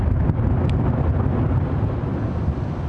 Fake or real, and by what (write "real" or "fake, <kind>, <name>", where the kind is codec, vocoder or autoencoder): real